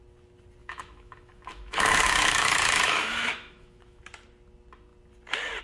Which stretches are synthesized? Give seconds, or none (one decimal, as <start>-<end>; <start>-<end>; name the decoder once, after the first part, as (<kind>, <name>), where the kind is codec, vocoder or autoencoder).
0.6-4.0 (autoencoder, DAC-VAE)